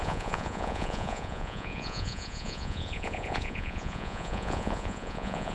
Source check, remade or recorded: remade